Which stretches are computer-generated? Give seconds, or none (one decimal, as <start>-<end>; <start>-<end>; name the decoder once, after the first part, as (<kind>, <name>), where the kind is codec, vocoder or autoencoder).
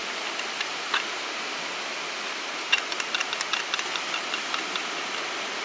none